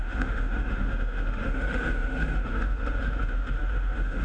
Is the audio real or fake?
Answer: fake